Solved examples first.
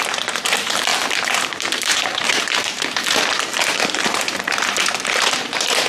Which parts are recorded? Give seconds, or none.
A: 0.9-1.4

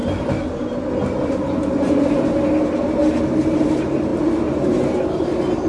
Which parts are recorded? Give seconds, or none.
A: 0.0-5.7

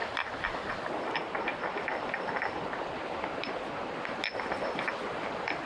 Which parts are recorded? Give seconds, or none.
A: 0.0-5.7

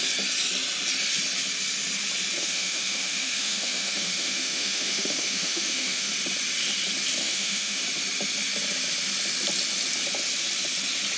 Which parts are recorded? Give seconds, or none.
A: 0.0-2.4; 6.1-7.2; 7.8-11.2